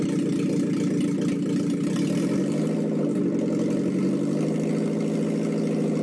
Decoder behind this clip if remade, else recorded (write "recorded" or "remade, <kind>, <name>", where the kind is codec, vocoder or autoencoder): recorded